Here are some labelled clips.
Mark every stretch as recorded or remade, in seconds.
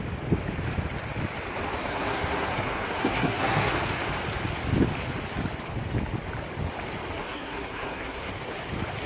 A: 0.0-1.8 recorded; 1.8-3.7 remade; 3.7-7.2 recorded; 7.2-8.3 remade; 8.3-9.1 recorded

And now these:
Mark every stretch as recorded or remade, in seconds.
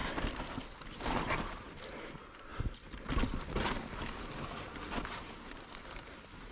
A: 0.0-6.5 recorded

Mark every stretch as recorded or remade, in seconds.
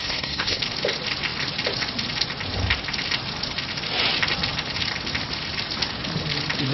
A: 0.0-0.6 remade; 0.6-6.7 recorded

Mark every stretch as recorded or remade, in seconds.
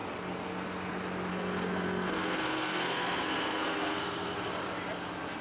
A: 0.0-1.3 recorded; 1.3-4.5 remade; 4.5-5.4 recorded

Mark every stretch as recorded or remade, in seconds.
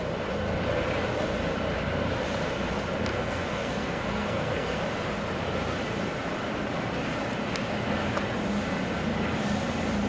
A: 0.0-3.1 recorded; 3.1-4.8 remade; 4.8-10.1 recorded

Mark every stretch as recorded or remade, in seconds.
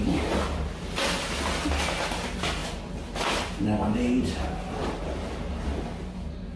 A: 0.0-6.6 recorded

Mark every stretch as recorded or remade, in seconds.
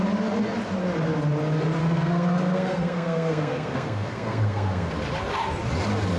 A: 0.0-1.8 recorded; 1.8-4.9 remade; 4.9-6.2 recorded